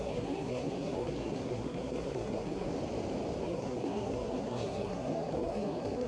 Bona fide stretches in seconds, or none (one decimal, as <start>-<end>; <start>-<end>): 2.7-3.4